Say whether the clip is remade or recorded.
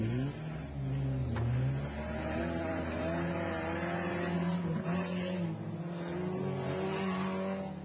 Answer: recorded